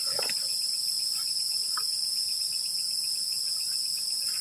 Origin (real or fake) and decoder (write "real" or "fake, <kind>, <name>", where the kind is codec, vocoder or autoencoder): real